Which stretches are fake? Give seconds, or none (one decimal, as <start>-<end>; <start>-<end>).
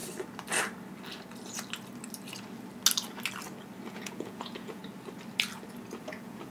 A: 3.9-4.8; 6.0-6.5